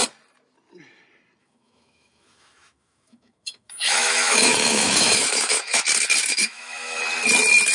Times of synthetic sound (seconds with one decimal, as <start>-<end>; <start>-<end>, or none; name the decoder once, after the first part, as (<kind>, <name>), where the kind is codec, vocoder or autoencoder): 1.4-5.8 (autoencoder, DAC-VAE); 6.2-7.0